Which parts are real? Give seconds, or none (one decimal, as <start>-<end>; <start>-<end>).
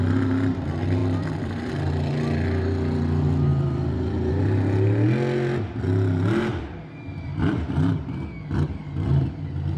0.0-1.0; 1.7-3.5; 4.3-6.5; 7.7-9.8